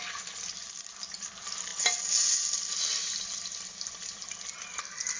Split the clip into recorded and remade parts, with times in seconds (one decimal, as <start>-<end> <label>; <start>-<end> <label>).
0.0-5.2 recorded